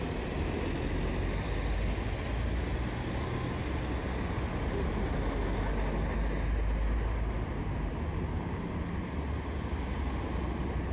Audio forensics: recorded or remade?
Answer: recorded